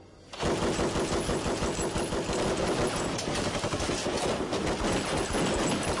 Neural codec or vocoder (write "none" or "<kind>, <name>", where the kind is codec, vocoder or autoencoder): none